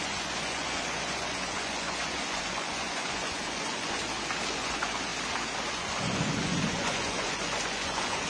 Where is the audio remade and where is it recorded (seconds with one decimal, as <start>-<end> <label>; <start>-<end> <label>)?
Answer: 0.0-4.0 remade; 4.0-4.5 recorded; 4.5-5.1 remade; 5.1-5.7 recorded; 5.7-8.3 remade